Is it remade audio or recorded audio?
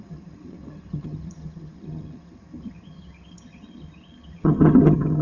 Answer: remade